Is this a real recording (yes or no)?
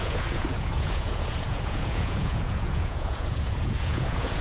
no